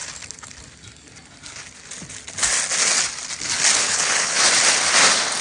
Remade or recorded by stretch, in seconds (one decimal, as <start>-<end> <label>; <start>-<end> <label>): 0.0-3.8 recorded; 3.8-4.4 remade; 4.4-5.4 recorded